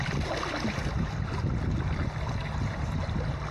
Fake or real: real